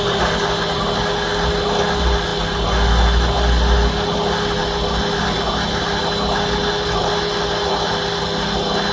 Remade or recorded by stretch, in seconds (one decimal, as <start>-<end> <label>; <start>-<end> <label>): 0.0-8.9 recorded